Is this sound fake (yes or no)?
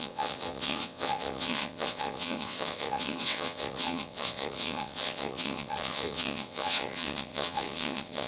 yes